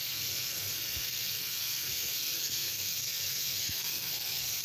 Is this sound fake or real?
fake